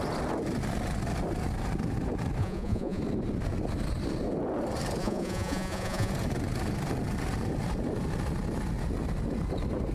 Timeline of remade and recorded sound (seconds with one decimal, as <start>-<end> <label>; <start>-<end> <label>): 0.0-2.4 recorded; 2.4-3.0 remade; 3.0-5.0 recorded; 5.0-6.1 remade; 6.1-9.9 recorded